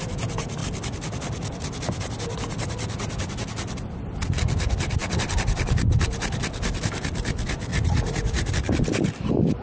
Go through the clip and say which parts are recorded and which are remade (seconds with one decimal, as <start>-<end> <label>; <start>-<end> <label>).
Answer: 0.0-7.7 recorded; 7.7-8.5 remade; 8.5-9.6 recorded